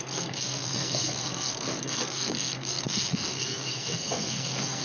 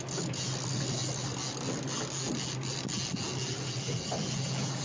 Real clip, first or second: second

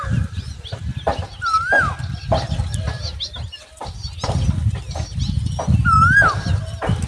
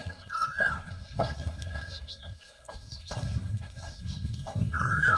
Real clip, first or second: first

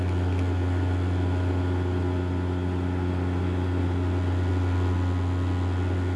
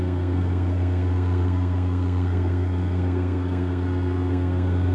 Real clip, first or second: first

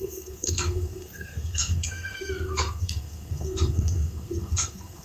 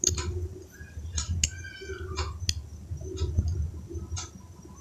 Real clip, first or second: second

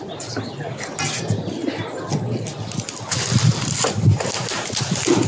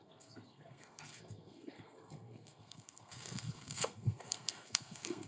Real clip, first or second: first